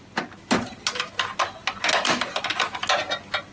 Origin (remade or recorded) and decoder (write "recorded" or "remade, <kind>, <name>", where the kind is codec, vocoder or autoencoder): recorded